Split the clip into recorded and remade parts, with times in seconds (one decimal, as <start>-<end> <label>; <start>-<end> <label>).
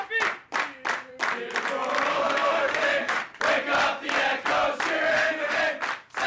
0.0-2.1 recorded; 2.1-3.2 remade; 3.2-5.1 recorded; 5.1-5.6 remade; 5.6-6.3 recorded